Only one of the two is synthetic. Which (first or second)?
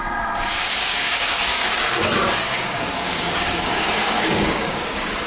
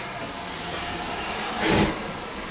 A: first